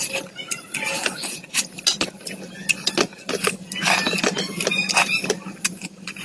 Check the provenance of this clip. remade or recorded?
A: recorded